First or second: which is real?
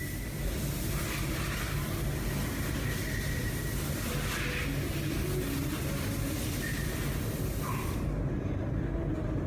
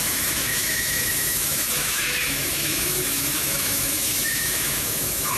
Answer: first